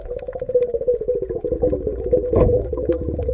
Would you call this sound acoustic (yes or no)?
no